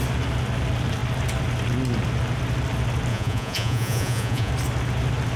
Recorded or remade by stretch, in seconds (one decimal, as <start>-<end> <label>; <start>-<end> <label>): 0.0-3.1 recorded; 3.1-4.5 remade; 4.5-5.4 recorded